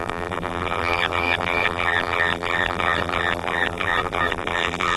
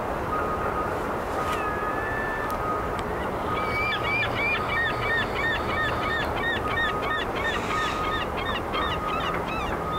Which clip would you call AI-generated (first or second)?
first